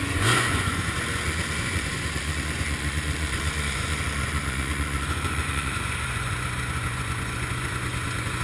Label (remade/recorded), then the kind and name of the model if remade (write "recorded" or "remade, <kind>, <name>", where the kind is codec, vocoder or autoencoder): remade, vocoder, Vocos